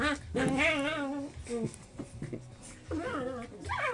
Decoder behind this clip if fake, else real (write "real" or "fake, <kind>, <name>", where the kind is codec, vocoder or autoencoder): real